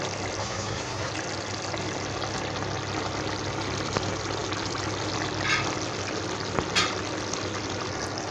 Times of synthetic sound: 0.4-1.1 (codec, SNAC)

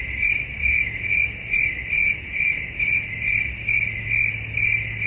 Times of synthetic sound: none

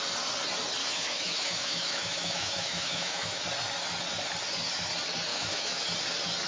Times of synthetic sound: 0.8-3.4 (autoencoder, DAC-VAE); 5.3-5.8